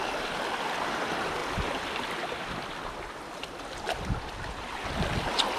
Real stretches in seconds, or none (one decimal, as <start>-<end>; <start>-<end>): 0.0-1.4; 4.8-5.6